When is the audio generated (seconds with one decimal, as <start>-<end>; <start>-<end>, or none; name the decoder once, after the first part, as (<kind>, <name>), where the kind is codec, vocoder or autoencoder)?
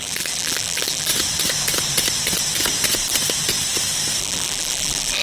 0.0-1.1 (vocoder, BigVGAN v2); 4.2-5.2